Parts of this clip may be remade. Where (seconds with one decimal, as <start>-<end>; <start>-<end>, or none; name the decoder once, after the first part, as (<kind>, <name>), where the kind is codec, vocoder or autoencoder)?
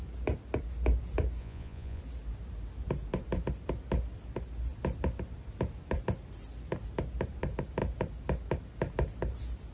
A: 1.4-2.0 (vocoder, Vocos)